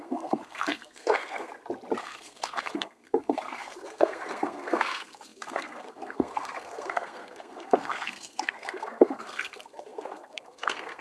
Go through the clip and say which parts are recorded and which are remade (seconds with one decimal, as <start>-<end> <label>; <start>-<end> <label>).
0.0-1.5 remade; 1.5-2.0 recorded; 2.0-11.0 remade